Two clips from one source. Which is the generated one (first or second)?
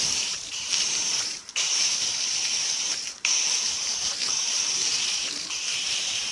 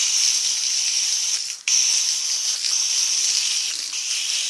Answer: first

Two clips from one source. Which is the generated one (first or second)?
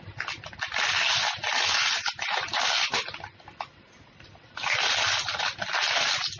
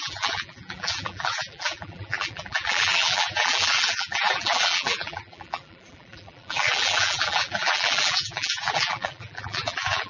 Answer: second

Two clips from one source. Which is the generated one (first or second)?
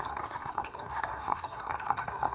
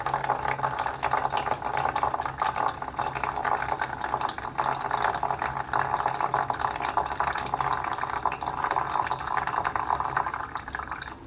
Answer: first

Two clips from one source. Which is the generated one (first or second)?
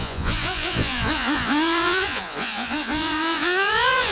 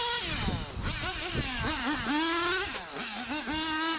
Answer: first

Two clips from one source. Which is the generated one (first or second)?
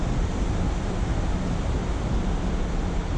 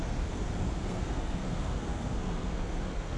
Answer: second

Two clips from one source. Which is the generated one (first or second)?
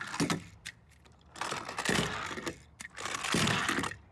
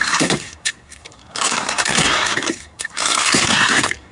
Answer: second